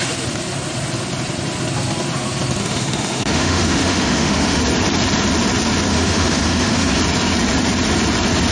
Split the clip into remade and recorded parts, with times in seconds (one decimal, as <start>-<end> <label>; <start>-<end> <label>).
0.0-2.6 recorded; 2.6-4.6 remade; 4.6-5.9 recorded; 5.9-7.0 remade; 7.0-8.5 recorded